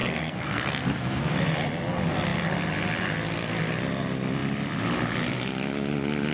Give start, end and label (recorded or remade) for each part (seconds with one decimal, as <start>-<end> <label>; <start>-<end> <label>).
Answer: 0.0-1.2 remade; 1.2-6.3 recorded